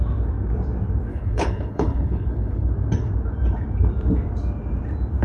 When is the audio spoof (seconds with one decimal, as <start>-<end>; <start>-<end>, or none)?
1.1-2.7